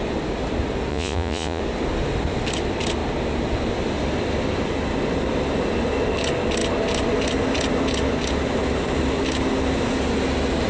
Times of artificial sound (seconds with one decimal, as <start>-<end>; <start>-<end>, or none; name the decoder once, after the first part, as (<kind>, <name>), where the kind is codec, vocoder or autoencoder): 0.9-1.6 (vocoder, Vocos)